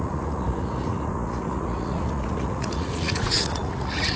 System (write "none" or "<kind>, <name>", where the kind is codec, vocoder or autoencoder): vocoder, Vocos